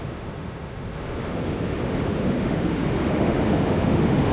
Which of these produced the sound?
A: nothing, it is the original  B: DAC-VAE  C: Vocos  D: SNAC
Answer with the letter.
B